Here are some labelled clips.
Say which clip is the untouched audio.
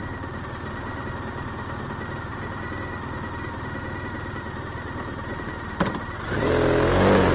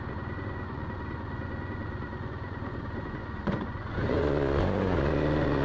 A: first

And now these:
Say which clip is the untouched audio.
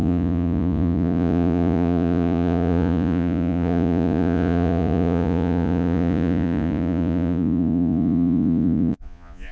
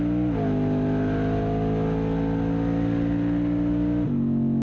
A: second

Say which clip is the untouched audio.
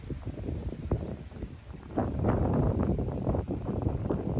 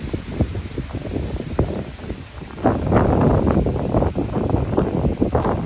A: second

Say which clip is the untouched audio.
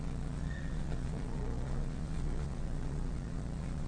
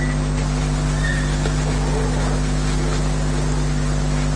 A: second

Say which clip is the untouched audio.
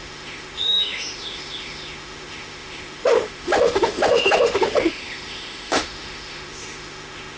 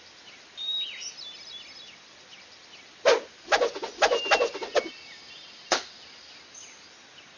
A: second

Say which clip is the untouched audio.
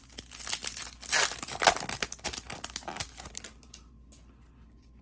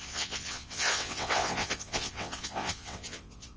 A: first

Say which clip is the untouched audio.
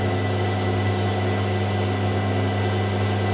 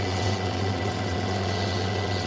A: first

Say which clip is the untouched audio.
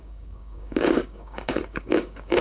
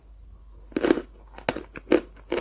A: second